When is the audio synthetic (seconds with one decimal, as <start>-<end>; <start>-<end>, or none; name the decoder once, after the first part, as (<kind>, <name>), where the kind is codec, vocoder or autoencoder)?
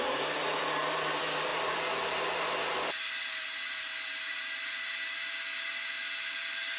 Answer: none